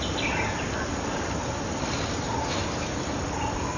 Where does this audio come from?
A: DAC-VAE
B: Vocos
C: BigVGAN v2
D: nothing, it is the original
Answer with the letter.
C